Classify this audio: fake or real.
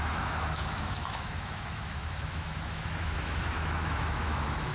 fake